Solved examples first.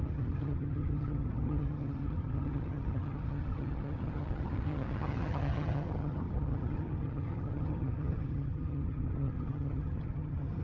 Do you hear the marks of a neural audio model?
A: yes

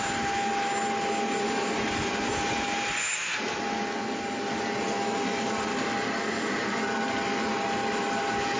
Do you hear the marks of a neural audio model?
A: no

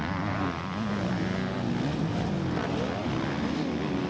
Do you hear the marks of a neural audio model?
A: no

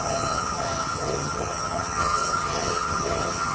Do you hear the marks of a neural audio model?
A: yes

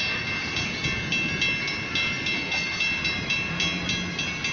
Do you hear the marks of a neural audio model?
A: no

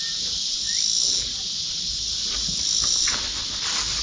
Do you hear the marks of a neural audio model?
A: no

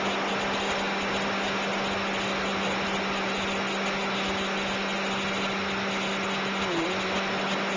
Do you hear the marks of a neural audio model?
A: no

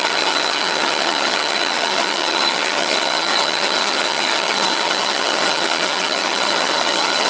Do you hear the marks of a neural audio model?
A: yes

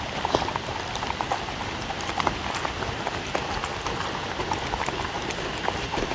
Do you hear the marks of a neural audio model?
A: no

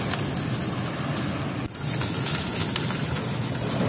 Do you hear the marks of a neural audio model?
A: no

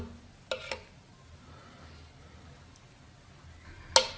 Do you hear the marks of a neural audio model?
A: no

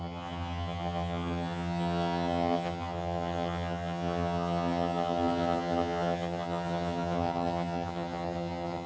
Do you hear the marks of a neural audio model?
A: yes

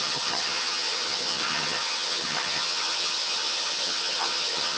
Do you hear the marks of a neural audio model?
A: yes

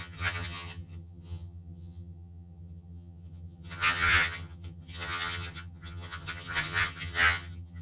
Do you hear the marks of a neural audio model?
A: yes